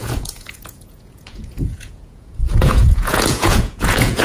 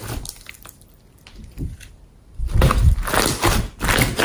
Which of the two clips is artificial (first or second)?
first